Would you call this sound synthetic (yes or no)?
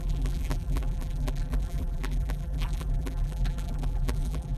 yes